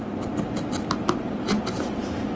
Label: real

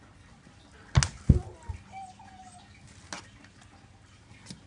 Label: real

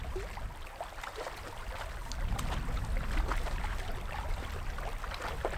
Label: real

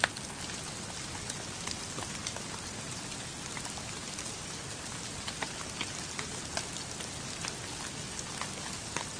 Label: real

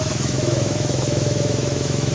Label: fake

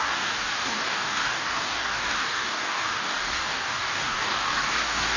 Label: fake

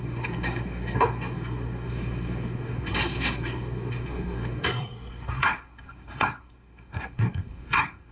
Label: fake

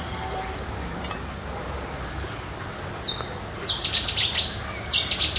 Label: real